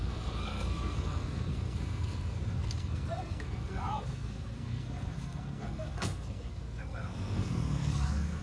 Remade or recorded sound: remade